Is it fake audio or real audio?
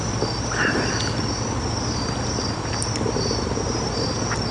real